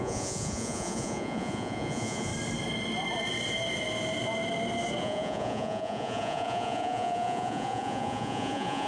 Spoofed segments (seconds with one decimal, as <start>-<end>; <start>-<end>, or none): 0.0-2.3; 5.0-8.9